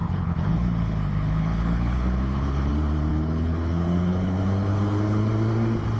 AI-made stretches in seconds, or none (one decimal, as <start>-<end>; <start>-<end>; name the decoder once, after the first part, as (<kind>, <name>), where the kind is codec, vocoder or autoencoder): 0.0-2.7 (codec, HILCodec); 3.1-5.3